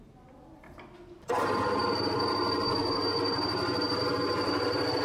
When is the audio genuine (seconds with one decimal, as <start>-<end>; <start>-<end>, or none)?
0.0-5.0